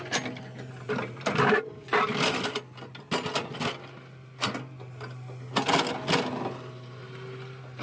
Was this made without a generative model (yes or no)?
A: yes